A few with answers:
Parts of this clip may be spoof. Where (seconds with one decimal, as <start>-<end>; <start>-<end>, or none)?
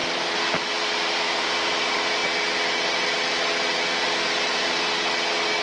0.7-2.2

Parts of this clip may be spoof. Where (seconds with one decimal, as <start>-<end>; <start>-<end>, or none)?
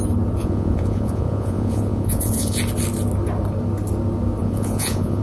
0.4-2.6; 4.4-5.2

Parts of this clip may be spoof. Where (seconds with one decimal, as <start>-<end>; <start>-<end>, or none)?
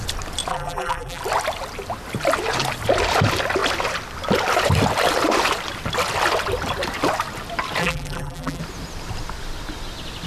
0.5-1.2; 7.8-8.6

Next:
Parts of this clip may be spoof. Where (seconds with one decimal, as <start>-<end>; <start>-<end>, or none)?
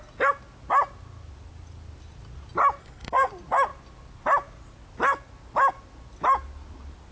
2.8-3.3